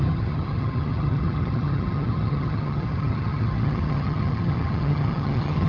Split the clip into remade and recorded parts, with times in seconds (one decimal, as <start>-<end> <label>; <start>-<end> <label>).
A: 0.0-5.7 remade